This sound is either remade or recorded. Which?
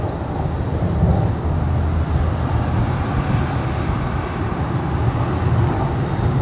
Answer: recorded